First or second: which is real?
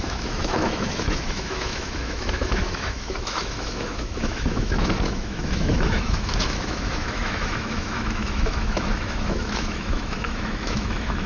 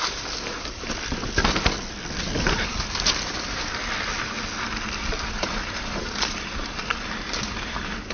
second